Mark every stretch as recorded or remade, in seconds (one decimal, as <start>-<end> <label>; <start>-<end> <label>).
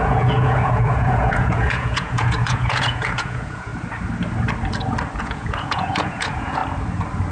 0.0-3.7 remade; 3.7-5.2 recorded; 5.2-6.6 remade; 6.6-7.3 recorded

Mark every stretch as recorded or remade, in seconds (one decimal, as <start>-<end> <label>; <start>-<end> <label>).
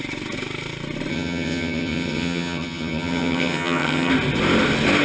0.0-1.1 recorded; 1.1-4.1 remade; 4.1-5.0 recorded